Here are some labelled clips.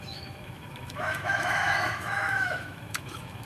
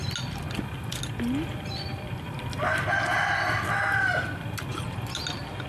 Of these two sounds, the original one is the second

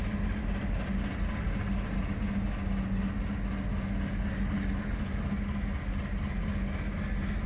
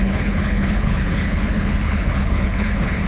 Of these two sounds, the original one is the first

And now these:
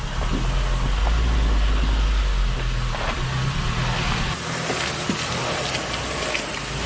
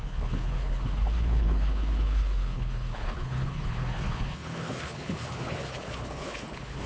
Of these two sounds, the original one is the first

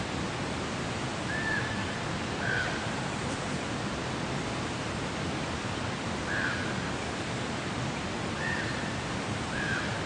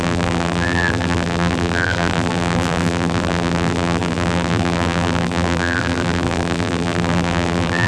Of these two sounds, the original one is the first